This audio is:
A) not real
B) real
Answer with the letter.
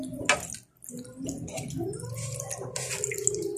B